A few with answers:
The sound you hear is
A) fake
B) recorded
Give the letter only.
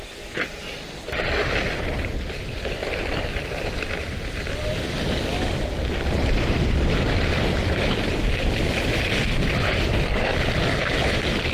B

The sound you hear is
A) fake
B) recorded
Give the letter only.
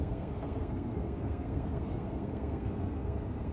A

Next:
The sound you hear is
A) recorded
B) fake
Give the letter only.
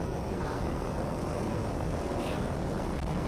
B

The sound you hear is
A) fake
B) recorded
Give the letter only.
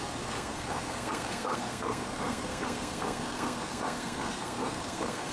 A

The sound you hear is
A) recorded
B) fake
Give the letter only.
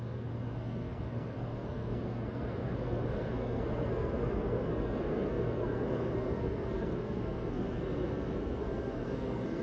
B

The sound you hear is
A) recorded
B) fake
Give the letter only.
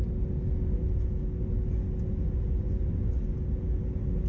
A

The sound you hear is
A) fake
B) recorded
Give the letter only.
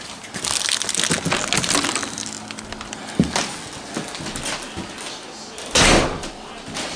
B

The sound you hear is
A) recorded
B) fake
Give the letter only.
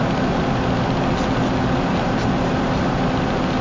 A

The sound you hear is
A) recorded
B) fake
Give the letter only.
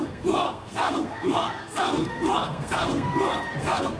B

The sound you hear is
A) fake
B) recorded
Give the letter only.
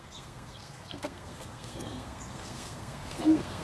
A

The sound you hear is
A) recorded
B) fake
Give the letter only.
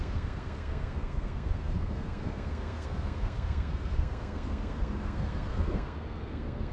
B